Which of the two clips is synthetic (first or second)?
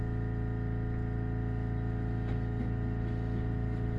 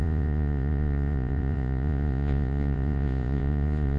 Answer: second